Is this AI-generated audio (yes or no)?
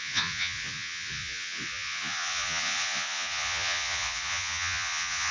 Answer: yes